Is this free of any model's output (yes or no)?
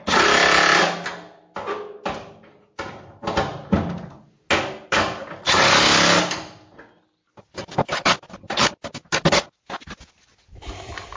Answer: yes